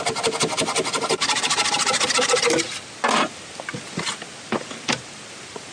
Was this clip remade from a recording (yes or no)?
no